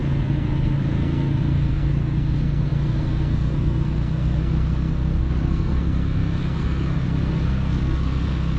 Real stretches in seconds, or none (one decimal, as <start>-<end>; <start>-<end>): none